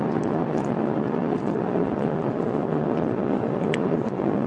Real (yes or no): no